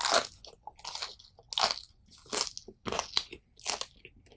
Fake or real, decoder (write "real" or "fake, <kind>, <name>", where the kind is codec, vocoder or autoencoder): real